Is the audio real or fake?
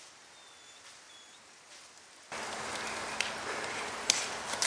real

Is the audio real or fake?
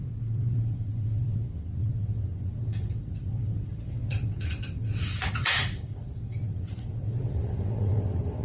fake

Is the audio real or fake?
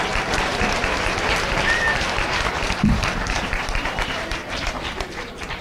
fake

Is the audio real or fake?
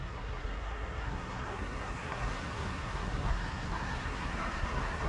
fake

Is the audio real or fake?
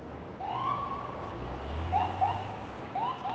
fake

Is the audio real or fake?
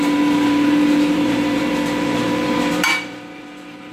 fake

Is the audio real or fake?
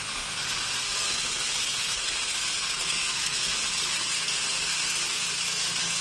fake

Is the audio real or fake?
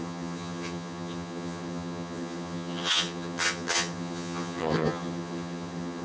fake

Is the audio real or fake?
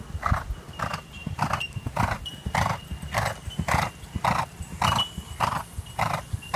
real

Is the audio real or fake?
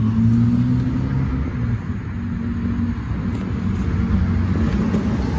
real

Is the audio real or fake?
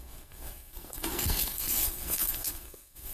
fake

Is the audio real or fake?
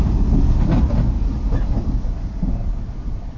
real